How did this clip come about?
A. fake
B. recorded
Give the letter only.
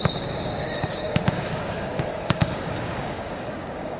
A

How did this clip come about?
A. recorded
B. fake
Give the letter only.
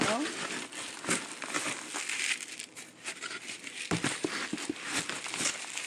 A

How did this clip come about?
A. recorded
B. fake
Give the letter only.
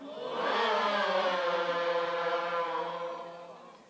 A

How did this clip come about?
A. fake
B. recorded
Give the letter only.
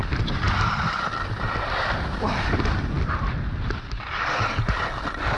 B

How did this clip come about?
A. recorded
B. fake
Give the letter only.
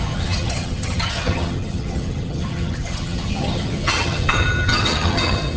B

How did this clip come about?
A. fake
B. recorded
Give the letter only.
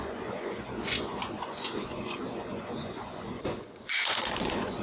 A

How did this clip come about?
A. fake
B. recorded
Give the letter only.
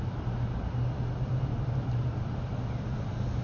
A